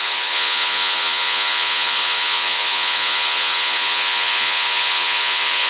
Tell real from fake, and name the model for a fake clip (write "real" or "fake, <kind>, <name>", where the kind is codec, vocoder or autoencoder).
fake, vocoder, Vocos